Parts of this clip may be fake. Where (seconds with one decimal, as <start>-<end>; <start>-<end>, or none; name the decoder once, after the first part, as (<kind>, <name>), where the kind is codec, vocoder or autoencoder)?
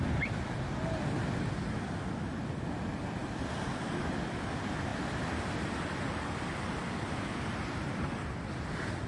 none